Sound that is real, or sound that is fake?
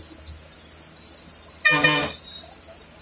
real